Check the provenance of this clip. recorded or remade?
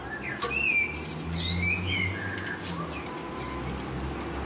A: recorded